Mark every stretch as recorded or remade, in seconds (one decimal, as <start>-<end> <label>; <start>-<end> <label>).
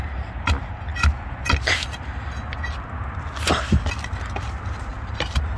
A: 0.0-4.9 recorded; 4.9-5.6 remade